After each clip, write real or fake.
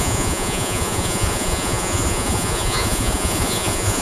fake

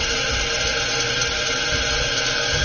real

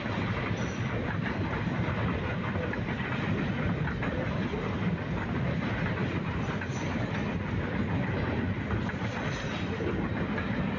real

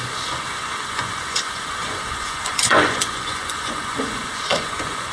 fake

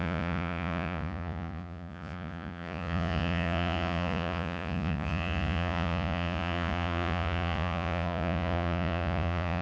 fake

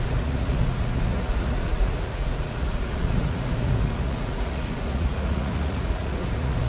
fake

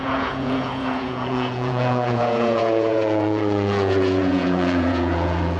fake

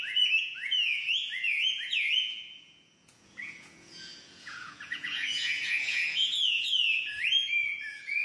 fake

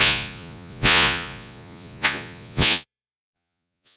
fake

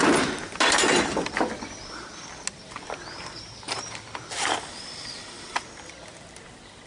real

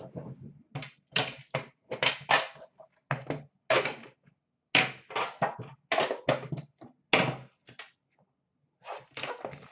real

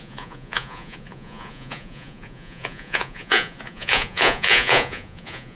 fake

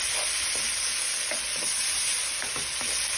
real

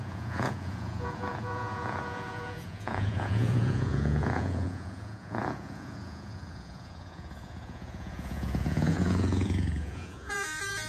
fake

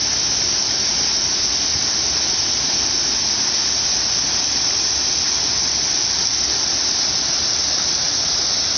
real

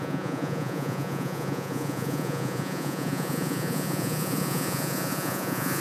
fake